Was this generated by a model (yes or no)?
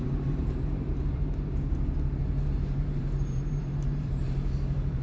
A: yes